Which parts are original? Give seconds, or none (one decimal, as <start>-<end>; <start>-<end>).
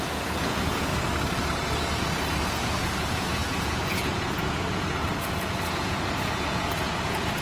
0.9-2.5